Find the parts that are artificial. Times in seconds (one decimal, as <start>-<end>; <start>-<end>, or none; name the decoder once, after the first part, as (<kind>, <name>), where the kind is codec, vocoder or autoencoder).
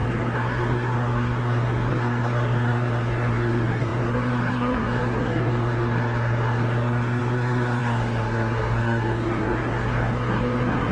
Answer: 0.0-10.9 (codec, SNAC)